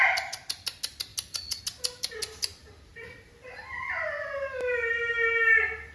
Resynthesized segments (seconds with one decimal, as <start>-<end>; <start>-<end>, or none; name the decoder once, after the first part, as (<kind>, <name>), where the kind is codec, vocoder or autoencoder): none